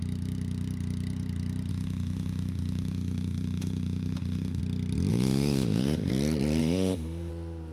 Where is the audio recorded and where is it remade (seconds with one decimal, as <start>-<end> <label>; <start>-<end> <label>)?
0.0-1.7 recorded; 1.7-4.6 remade; 4.6-5.1 recorded; 5.1-6.1 remade; 6.1-6.6 recorded; 6.6-7.3 remade; 7.3-7.7 recorded